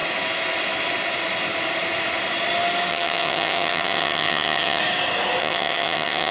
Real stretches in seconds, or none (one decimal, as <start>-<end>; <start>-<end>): 0.0-2.9; 4.8-5.4